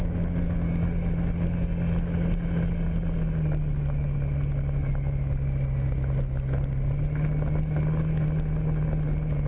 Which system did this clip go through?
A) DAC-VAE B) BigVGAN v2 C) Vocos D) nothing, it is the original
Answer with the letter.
D